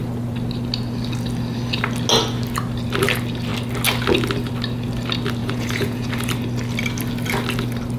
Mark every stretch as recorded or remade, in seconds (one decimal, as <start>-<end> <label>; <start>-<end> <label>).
0.0-5.4 recorded; 5.4-6.1 remade; 6.1-8.0 recorded